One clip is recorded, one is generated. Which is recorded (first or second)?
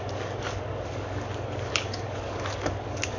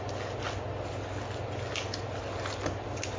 second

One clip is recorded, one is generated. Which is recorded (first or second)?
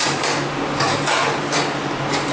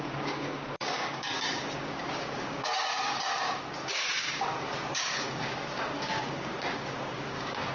first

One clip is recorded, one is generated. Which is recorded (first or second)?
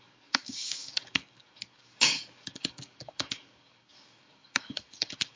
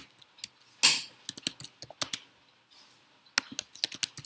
second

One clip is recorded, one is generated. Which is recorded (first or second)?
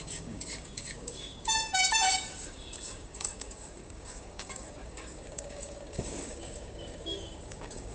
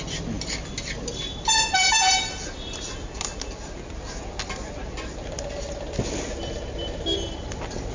second